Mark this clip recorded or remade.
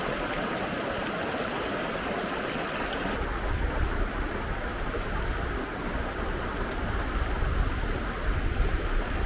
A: recorded